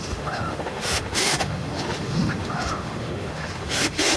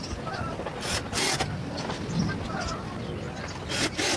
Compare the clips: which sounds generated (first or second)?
first